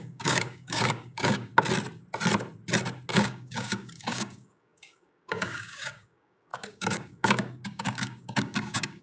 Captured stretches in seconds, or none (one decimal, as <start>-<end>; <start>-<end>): 1.5-3.1